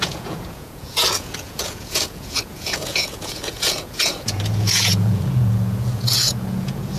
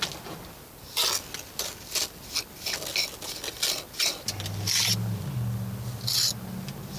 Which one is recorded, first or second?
second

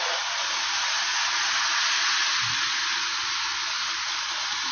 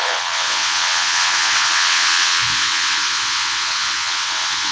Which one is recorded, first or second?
first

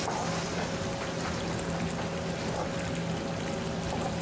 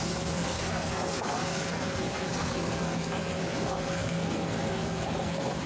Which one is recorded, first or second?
first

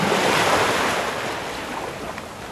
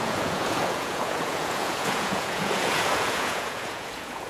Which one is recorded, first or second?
first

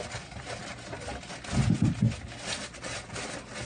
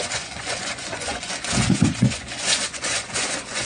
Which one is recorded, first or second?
first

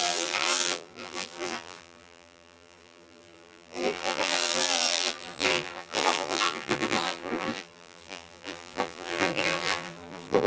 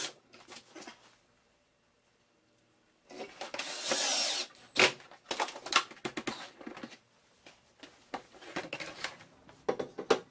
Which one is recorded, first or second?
second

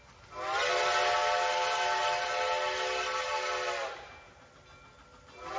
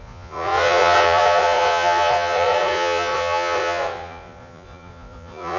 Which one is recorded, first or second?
first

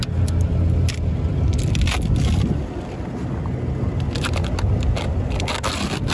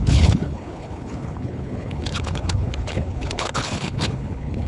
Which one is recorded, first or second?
first